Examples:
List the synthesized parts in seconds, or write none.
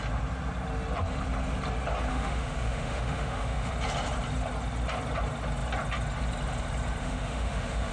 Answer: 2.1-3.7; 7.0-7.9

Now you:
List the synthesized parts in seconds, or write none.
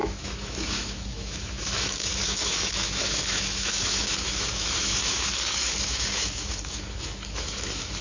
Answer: 0.0-8.0